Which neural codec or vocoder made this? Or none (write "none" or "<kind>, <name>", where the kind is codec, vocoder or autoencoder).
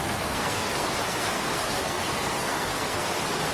codec, SNAC